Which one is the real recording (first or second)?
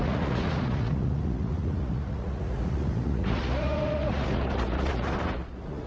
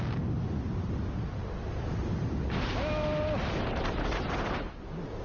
second